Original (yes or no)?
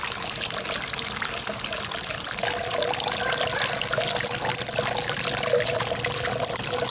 yes